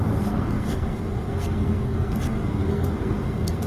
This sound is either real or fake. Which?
fake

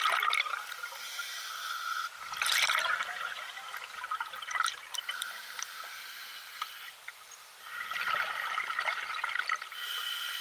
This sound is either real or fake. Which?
real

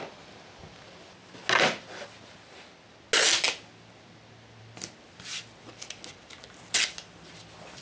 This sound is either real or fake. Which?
real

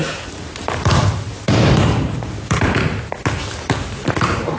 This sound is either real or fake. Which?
real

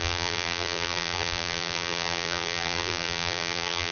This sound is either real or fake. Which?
fake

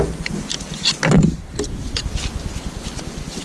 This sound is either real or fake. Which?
real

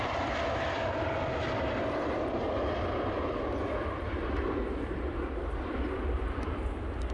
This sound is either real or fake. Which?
fake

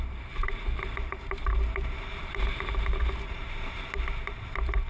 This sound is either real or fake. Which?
fake